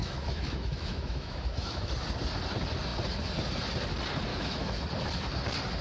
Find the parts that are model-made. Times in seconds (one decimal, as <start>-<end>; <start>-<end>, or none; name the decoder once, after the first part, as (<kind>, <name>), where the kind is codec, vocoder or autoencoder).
0.0-1.9 (autoencoder, DAC-VAE); 4.3-4.8